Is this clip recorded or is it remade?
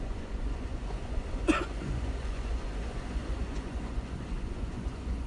remade